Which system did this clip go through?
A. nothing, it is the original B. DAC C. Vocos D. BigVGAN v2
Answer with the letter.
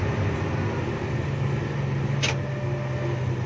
A